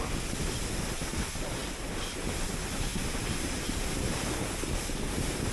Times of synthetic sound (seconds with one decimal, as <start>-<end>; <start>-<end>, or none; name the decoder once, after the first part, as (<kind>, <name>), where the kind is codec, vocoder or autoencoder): 1.6-2.2 (vocoder, BigVGAN v2)